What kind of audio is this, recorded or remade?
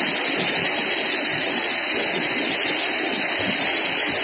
recorded